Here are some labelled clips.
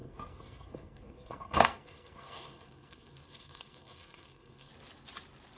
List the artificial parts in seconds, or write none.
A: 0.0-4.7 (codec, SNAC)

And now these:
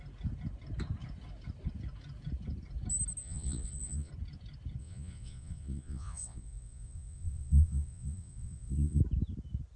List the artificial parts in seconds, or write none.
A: 3.2-4.1 (vocoder, Vocos); 4.8-9.0

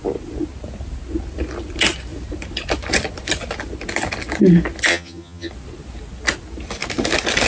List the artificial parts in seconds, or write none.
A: 4.9-5.5 (vocoder, HiFi-GAN)

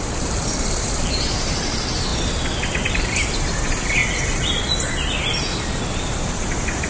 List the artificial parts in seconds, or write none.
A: 0.0-2.1 (vocoder, BigVGAN v2); 3.0-4.0; 6.0-6.9